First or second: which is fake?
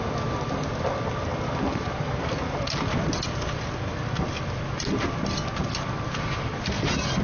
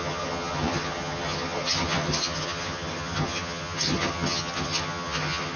second